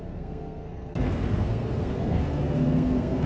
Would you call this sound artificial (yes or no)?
yes